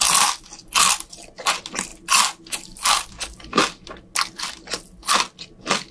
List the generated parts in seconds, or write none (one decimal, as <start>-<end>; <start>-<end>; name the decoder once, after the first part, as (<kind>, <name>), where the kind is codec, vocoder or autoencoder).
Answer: none